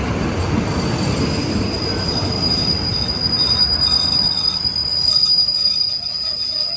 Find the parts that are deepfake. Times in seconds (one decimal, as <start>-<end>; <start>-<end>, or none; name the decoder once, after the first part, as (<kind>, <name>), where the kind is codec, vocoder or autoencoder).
none